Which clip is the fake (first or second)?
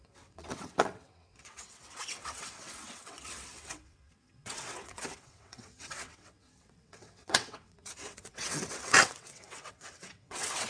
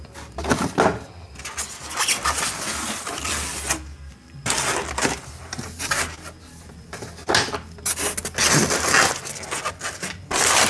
first